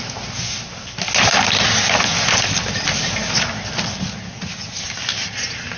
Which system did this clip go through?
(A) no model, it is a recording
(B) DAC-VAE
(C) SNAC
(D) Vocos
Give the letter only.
A